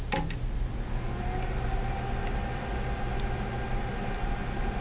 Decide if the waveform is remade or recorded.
recorded